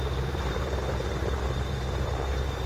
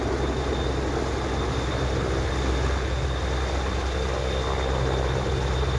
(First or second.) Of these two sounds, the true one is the second